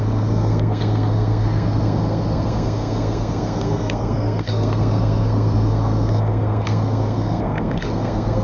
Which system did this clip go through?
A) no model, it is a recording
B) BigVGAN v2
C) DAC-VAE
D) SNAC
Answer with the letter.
D